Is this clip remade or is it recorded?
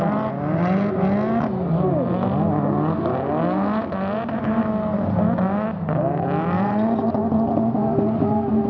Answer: recorded